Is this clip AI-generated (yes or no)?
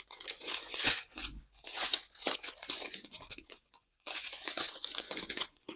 yes